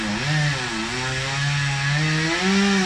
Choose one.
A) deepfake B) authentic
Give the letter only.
B